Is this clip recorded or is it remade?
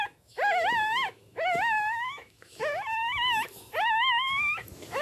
remade